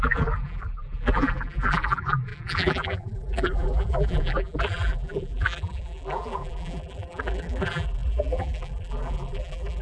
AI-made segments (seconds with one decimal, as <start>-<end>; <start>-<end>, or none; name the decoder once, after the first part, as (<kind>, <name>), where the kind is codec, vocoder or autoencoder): 0.0-9.8 (vocoder, BigVGAN v2)